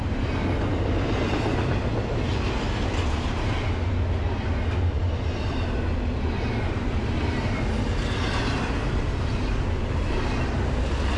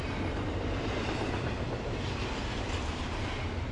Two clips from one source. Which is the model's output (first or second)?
second